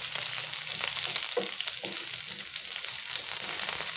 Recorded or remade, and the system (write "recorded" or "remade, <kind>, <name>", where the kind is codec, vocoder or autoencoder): recorded